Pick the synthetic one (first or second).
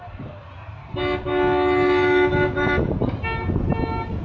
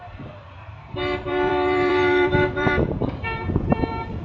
second